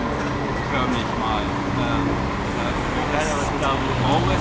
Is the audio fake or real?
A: real